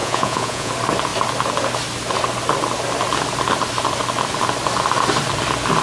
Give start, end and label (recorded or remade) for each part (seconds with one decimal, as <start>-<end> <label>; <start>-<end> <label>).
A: 0.0-0.7 remade; 0.7-5.8 recorded